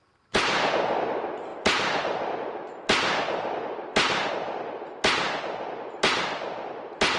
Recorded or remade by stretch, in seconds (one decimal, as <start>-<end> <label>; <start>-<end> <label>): 0.0-7.2 recorded

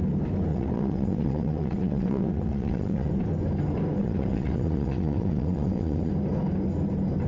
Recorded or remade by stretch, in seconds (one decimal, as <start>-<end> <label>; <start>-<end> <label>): 0.0-0.5 recorded; 0.5-3.1 remade; 3.1-4.0 recorded; 4.0-6.1 remade; 6.1-7.3 recorded

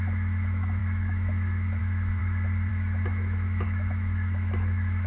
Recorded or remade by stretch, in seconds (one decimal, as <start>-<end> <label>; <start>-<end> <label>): 0.0-2.2 remade; 2.2-2.7 recorded; 2.7-5.1 remade